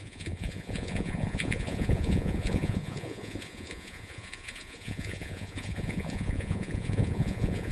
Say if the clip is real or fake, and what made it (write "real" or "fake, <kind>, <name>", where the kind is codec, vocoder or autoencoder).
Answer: fake, vocoder, Vocos